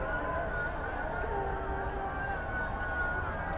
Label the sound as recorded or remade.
recorded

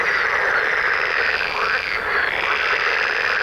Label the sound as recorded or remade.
recorded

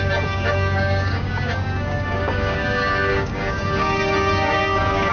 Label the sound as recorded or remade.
remade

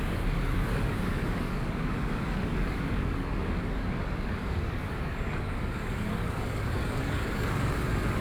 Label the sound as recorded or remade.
remade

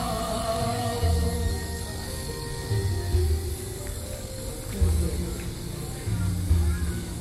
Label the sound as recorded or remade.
remade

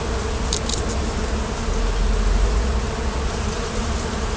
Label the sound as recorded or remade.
recorded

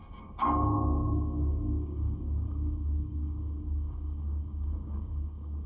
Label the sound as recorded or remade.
remade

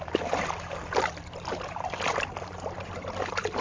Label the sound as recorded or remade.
recorded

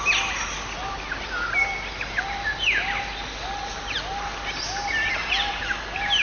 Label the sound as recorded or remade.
recorded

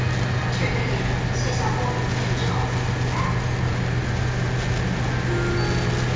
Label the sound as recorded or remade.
recorded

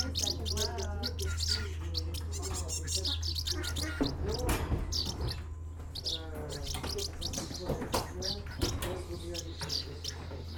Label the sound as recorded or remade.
recorded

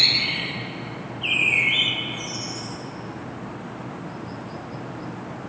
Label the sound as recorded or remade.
recorded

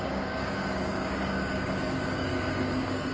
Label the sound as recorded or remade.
remade